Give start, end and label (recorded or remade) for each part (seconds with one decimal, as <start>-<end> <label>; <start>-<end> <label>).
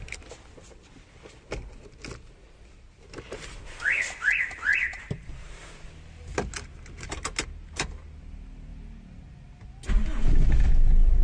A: 0.0-11.2 recorded